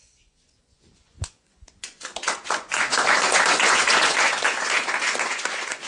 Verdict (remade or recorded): remade